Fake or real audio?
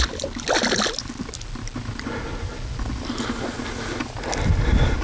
real